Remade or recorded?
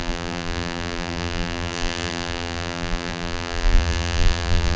remade